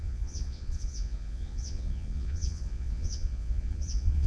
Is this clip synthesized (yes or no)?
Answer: yes